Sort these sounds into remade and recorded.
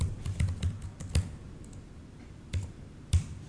recorded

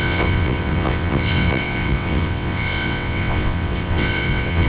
remade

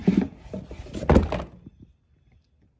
recorded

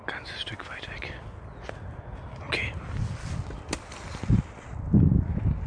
recorded